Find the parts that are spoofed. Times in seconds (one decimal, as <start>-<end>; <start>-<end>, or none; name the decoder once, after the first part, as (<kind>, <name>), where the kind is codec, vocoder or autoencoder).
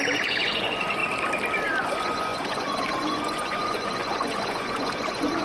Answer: 0.0-1.0 (vocoder, Vocos); 1.8-5.4